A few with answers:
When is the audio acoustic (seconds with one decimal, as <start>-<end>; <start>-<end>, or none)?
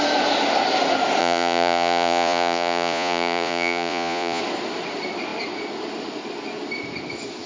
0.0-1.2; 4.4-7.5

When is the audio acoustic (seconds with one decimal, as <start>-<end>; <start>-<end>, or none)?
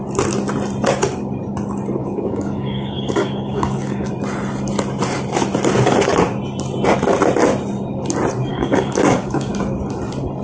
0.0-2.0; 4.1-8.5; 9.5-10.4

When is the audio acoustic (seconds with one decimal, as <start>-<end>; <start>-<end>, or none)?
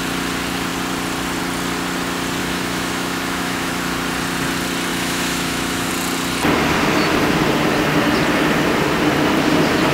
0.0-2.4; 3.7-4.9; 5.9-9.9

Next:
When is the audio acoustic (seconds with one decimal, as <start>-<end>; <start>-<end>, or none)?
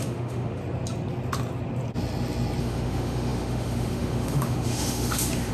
0.6-2.6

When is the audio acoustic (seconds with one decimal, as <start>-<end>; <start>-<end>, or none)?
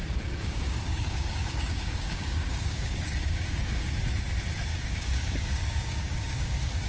3.9-4.7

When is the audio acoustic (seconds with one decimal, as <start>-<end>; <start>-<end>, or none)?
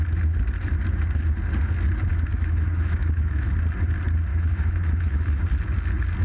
0.0-2.1; 3.5-4.3; 5.4-6.2